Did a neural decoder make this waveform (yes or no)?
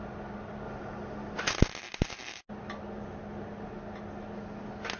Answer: no